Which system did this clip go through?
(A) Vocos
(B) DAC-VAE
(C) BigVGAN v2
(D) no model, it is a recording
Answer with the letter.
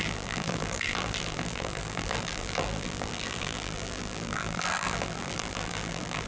C